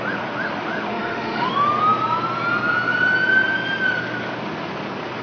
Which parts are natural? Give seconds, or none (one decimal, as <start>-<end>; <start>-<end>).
0.0-0.9; 1.5-5.2